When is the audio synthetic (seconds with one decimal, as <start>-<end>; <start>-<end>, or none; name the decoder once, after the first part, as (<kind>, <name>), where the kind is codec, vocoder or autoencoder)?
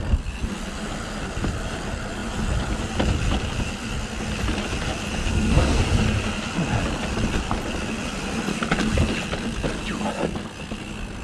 5.2-5.8 (codec, SNAC)